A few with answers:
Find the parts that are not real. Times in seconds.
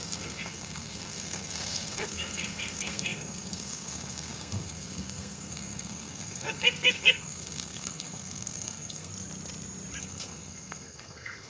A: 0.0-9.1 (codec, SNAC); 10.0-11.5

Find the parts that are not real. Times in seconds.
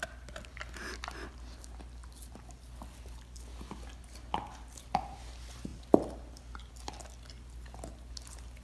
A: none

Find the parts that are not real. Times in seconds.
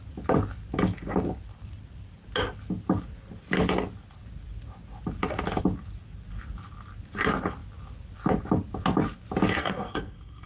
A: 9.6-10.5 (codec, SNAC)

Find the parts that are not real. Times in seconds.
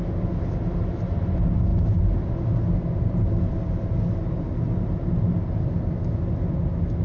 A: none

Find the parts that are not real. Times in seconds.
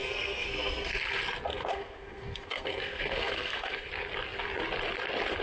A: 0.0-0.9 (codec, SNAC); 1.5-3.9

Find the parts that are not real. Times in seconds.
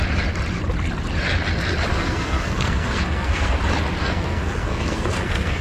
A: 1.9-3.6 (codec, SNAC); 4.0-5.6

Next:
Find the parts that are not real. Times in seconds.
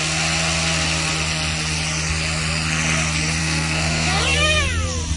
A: 3.4-4.2 (codec, SNAC)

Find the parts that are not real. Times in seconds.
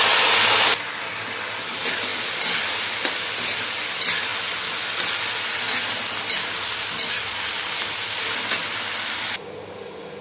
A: none